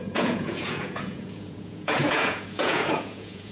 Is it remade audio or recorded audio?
remade